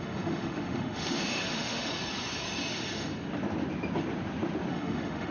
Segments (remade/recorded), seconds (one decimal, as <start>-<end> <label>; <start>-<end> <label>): 0.0-1.9 remade; 1.9-2.7 recorded; 2.7-3.1 remade; 3.1-4.7 recorded; 4.7-5.3 remade